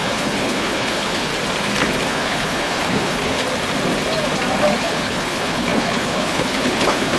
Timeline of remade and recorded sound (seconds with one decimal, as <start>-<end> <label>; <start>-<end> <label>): 0.0-1.3 remade; 1.3-2.1 recorded; 2.1-3.4 remade; 3.4-4.8 recorded; 4.8-7.2 remade